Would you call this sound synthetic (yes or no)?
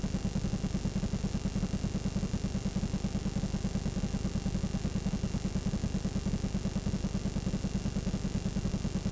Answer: no